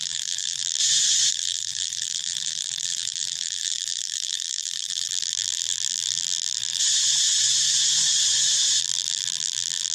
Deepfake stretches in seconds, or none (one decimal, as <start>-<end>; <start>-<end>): 0.0-0.8; 1.3-6.8; 8.8-9.9